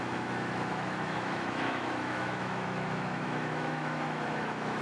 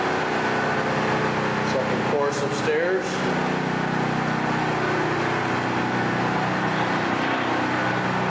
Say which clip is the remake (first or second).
first